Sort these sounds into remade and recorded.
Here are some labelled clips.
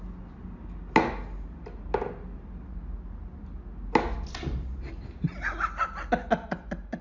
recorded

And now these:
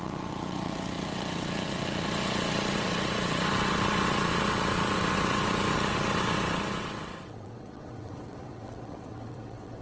remade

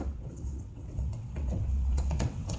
remade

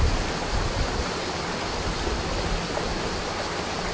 recorded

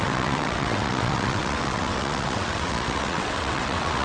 remade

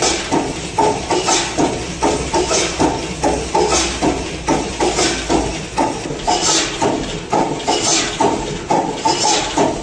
recorded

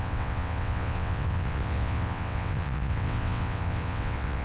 remade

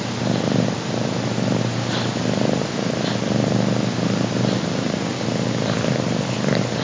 recorded